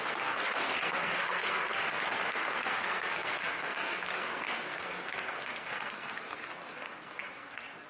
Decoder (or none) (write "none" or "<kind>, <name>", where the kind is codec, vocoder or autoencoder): codec, SNAC